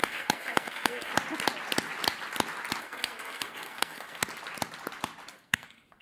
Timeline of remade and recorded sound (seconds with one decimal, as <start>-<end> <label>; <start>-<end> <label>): 0.0-1.1 remade; 1.1-2.8 recorded; 2.8-4.2 remade; 4.2-5.3 recorded; 5.3-6.0 remade